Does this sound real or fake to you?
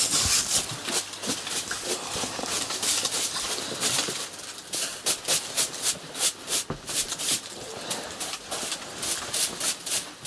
real